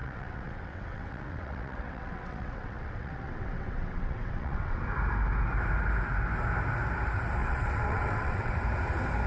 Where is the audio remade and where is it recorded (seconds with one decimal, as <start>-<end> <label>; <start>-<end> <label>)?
0.0-4.8 remade; 4.8-7.4 recorded; 7.4-8.5 remade; 8.5-9.3 recorded